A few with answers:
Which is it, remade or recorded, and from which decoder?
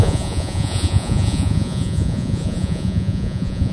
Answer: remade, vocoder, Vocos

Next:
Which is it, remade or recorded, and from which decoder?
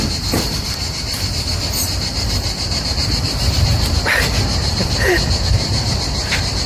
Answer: remade, vocoder, BigVGAN v2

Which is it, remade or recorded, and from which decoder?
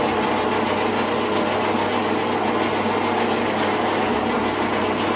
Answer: recorded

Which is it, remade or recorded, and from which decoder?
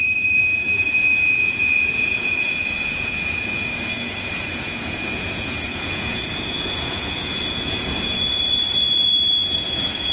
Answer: remade, vocoder, Vocos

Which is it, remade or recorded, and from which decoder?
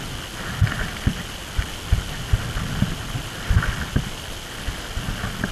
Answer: recorded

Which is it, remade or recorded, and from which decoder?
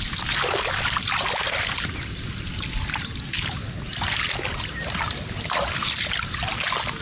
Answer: recorded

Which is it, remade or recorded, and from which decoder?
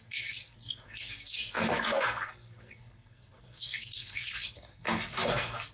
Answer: remade, codec, SNAC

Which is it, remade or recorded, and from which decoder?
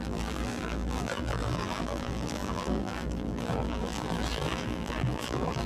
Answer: remade, vocoder, BigVGAN v2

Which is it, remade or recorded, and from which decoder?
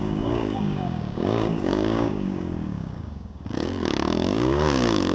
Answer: remade, codec, DAC